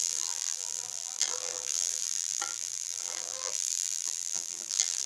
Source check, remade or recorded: remade